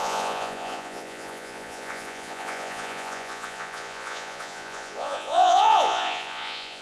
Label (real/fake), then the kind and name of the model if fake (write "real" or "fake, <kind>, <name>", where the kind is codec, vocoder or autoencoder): fake, vocoder, Vocos